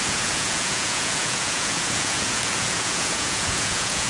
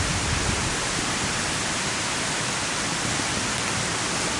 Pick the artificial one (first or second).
first